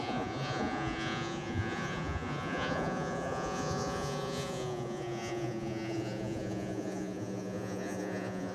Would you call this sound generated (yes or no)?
yes